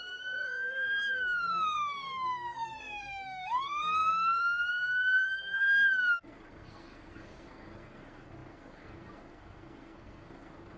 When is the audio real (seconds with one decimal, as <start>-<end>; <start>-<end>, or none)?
none